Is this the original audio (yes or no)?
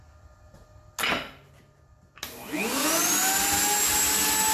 yes